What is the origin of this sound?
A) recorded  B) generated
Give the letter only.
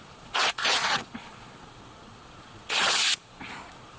B